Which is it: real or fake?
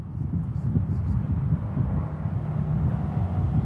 real